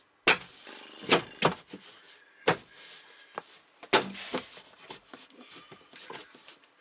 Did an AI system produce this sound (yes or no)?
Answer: no